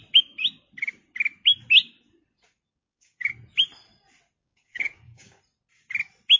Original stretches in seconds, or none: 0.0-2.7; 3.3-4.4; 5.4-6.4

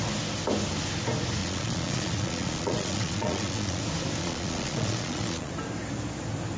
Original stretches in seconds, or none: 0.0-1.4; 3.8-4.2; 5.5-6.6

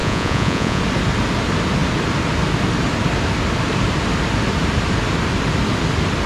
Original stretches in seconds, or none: 0.8-6.3

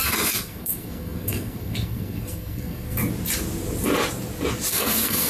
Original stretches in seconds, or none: 3.0-4.7

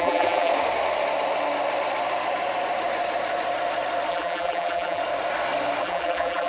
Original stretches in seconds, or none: 0.5-4.1; 5.0-5.8

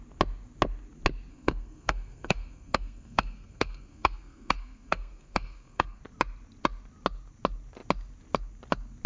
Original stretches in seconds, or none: 0.0-1.3; 6.0-9.1

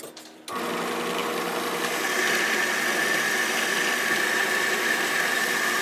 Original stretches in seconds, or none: 0.0-5.8

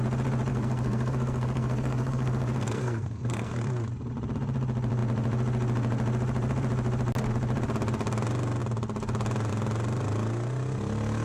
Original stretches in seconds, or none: 0.0-0.5; 3.5-11.2